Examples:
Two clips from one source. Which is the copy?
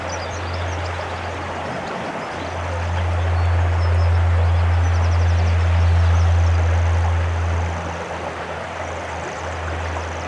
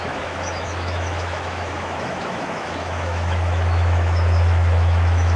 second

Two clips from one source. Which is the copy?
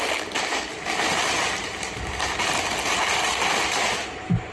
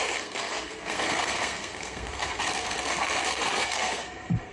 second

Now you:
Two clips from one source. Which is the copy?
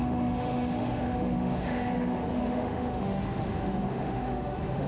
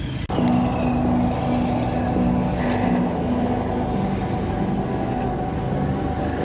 first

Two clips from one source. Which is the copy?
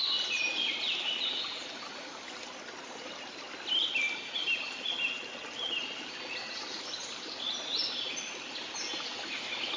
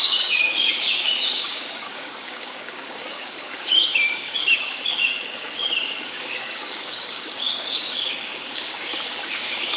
second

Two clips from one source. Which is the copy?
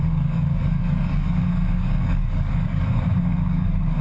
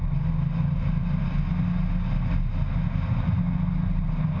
first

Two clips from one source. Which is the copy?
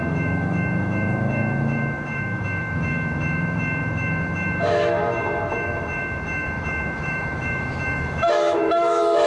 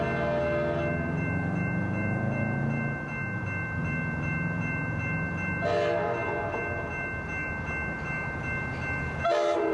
first